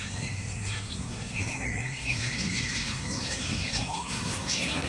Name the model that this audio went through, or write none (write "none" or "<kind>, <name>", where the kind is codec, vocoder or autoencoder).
codec, SNAC